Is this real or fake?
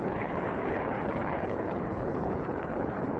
fake